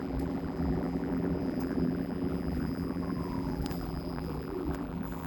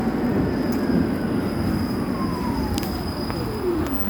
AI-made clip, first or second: first